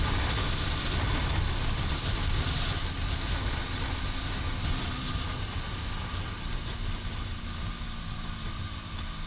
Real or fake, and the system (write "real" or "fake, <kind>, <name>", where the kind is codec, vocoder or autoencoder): real